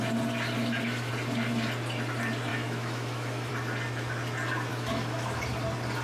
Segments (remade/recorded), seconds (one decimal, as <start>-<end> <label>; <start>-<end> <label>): 0.0-0.6 recorded; 0.6-1.1 remade; 1.1-2.5 recorded; 2.5-3.5 remade; 3.5-4.7 recorded; 4.7-5.4 remade; 5.4-6.0 recorded